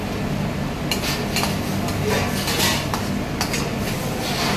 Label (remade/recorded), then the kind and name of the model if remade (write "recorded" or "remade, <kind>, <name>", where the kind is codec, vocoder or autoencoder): recorded